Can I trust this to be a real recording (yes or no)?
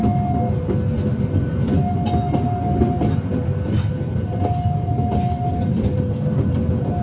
yes